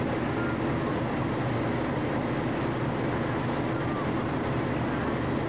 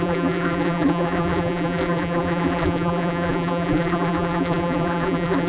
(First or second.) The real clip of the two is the first